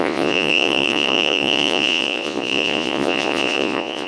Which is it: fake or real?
fake